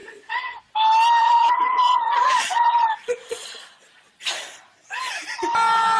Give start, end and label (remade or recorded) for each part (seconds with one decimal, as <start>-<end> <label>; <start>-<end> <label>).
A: 0.0-0.6 remade; 0.6-1.2 recorded; 1.2-4.1 remade; 4.1-6.0 recorded